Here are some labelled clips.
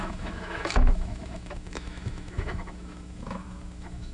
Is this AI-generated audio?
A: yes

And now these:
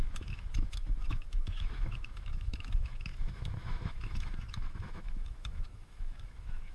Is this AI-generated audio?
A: yes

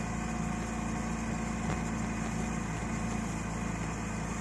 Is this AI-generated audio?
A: no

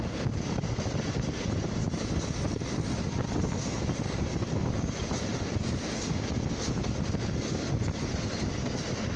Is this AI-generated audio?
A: no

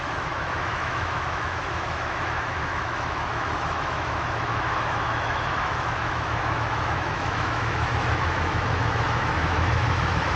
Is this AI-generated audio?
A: yes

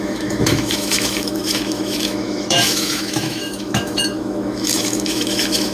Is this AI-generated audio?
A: yes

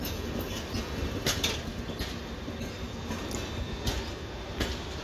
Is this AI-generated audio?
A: no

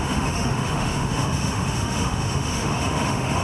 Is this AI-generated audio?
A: yes